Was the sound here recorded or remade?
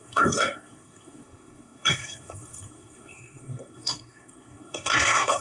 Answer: remade